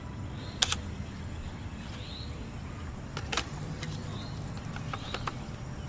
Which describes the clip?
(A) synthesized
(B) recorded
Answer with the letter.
B